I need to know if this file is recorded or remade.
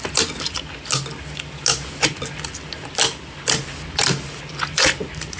recorded